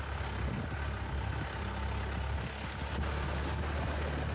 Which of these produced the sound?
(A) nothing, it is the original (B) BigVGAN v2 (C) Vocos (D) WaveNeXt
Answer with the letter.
A